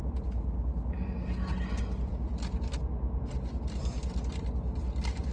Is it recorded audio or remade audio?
recorded